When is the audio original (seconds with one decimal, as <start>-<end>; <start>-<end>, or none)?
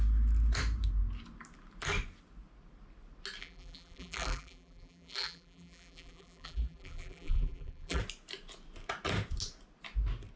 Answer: 0.0-3.4; 8.0-10.4